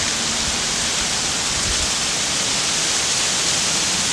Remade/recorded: recorded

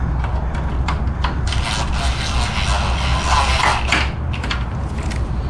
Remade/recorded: recorded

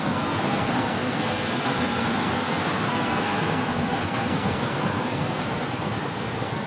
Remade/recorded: remade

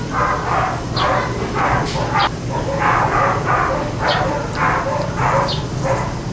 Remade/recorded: recorded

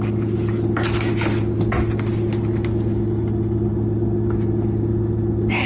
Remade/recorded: recorded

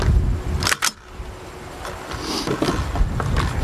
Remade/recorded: recorded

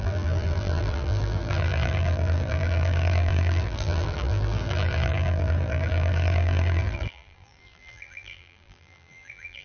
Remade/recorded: remade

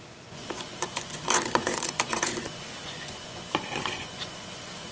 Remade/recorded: remade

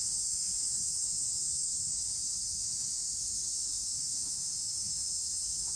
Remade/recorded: remade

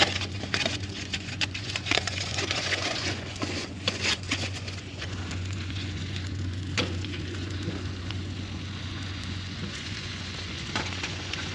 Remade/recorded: remade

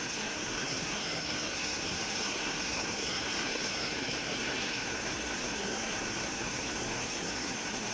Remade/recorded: remade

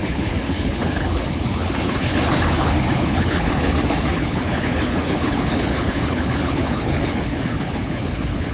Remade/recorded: remade